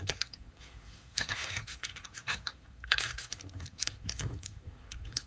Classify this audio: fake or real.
fake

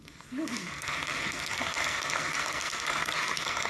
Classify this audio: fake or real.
fake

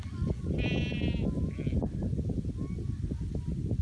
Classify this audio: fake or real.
real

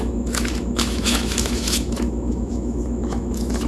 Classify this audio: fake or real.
fake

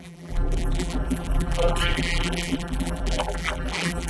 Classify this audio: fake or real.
fake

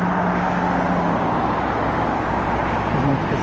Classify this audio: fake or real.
real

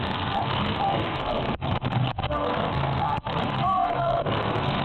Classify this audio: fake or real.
fake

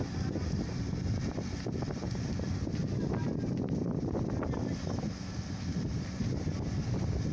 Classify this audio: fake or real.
real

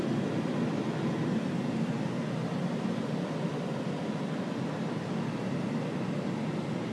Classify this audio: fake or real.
real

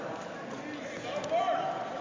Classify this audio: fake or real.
real